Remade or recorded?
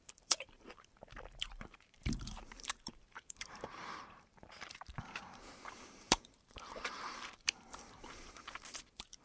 remade